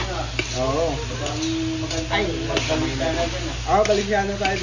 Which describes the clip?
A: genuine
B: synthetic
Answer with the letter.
A